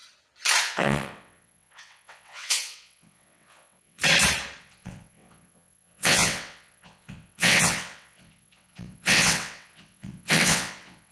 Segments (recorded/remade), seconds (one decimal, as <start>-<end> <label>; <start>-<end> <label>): 0.0-0.6 recorded; 0.6-4.0 remade; 4.0-4.6 recorded; 4.6-11.1 remade